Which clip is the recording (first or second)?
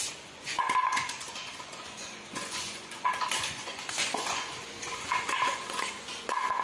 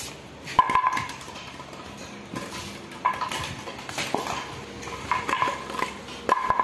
second